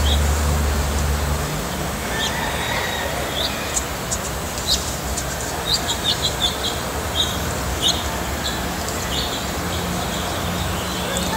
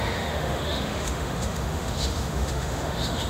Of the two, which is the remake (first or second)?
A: second